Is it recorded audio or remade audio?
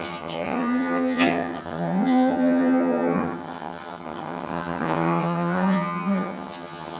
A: remade